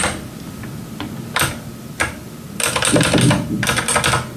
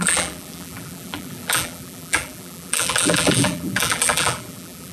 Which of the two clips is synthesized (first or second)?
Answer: second